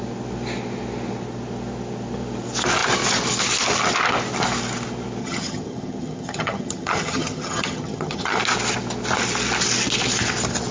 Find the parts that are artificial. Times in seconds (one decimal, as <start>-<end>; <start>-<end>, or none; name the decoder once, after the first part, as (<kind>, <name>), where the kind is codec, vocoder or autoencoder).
5.2-8.4 (vocoder, HiFi-GAN)